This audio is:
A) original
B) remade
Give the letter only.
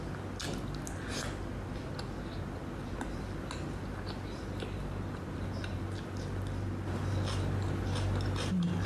A